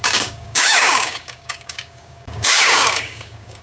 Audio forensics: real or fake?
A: fake